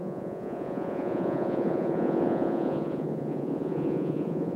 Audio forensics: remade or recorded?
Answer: remade